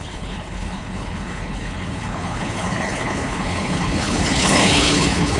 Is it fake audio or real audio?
fake